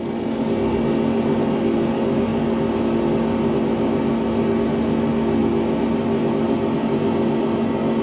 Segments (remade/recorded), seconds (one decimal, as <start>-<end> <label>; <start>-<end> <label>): 0.0-8.0 recorded